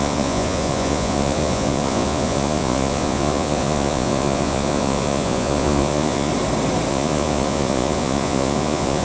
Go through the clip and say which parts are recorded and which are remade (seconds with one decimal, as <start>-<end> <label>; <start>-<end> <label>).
0.0-6.3 remade; 6.3-6.9 recorded; 6.9-9.0 remade